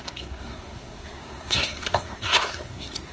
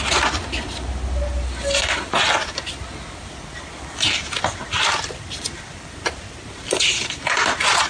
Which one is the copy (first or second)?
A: first